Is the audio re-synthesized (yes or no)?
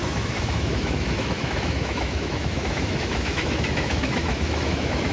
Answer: yes